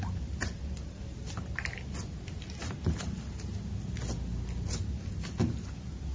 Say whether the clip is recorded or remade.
recorded